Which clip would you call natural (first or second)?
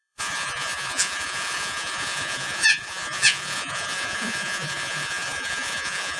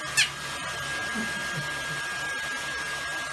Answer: second